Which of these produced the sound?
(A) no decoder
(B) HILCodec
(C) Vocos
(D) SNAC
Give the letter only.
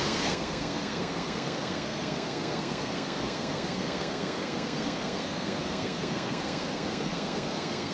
D